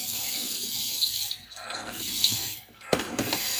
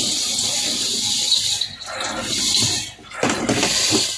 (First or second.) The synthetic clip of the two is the first